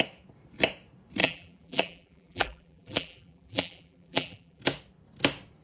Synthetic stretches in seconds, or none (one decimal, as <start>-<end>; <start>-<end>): 1.2-4.6